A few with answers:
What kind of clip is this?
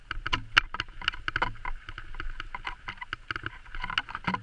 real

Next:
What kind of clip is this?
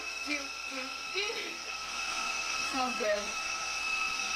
fake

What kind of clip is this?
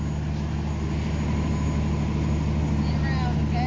real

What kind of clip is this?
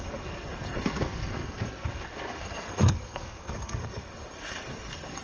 fake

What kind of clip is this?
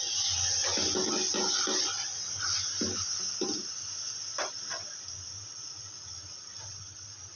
real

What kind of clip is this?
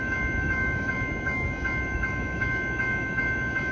fake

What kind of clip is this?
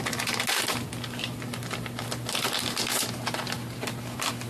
real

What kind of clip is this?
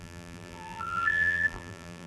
fake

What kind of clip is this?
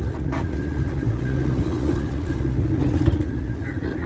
fake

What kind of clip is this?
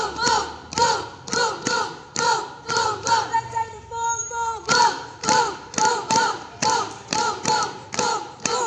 fake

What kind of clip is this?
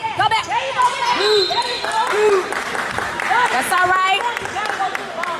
fake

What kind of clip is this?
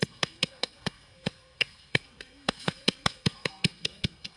fake